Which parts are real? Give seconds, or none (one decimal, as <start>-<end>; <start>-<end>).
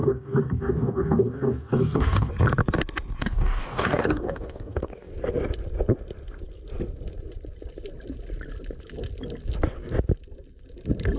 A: 2.3-3.2; 5.1-11.2